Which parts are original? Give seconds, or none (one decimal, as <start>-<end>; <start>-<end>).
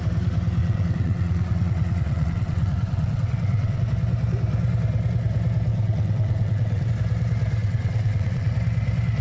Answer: 0.0-0.6; 3.8-5.7; 6.9-7.6; 8.5-9.2